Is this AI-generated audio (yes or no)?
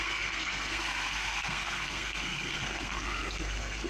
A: yes